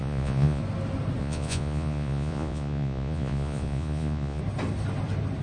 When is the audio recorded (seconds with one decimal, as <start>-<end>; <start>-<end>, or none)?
0.6-1.2; 4.4-5.4